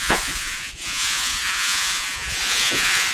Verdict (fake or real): fake